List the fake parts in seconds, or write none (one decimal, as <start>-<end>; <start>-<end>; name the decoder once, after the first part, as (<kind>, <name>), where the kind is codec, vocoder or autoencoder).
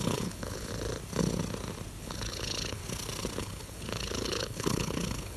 0.0-0.7 (codec, HILCodec); 2.0-2.8; 3.4-5.4